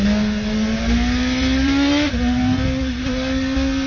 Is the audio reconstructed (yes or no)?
no